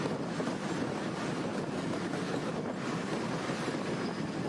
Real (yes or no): yes